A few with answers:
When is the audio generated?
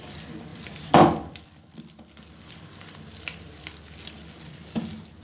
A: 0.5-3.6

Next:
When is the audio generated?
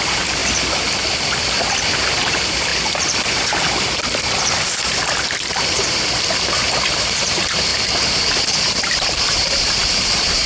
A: 0.0-0.4; 2.1-2.7; 7.0-10.5